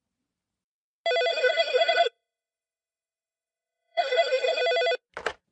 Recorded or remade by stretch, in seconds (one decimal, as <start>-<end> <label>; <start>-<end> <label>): 0.0-1.3 recorded; 1.3-4.6 remade; 4.6-5.5 recorded

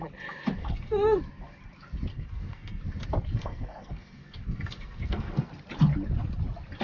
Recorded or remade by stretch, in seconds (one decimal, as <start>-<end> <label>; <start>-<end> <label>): 0.0-0.6 recorded; 0.6-1.2 remade; 1.2-2.1 recorded; 2.1-2.8 remade; 2.8-3.3 recorded; 3.3-5.5 remade; 5.5-6.8 recorded

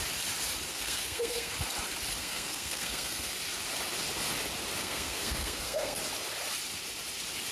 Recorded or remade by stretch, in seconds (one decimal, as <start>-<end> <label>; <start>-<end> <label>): 0.0-0.7 recorded; 0.7-1.5 remade; 1.5-2.2 recorded; 2.2-3.3 remade; 3.3-4.8 recorded; 4.8-6.0 remade; 6.0-7.5 recorded

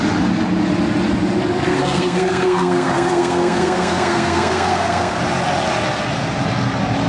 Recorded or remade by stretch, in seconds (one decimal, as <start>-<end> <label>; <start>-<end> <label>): 0.0-1.7 recorded; 1.7-5.2 remade; 5.2-7.1 recorded

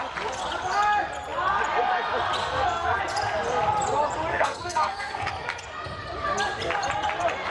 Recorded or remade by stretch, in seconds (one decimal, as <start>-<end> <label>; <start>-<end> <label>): 0.0-2.4 recorded; 2.4-3.0 remade; 3.0-4.3 recorded; 4.3-5.3 remade; 5.3-7.5 recorded

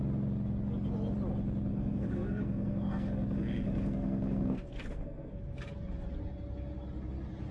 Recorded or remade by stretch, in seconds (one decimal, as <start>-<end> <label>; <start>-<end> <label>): 0.0-1.7 recorded; 1.7-5.4 remade; 5.4-7.5 recorded

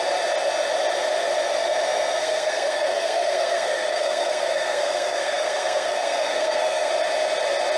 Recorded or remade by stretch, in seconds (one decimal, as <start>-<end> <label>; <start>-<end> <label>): 0.0-2.2 recorded; 2.2-6.9 remade; 6.9-7.8 recorded

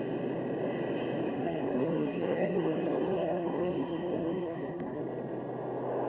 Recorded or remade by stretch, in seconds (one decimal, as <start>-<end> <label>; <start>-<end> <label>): 0.0-1.3 recorded; 1.3-5.0 remade; 5.0-6.1 recorded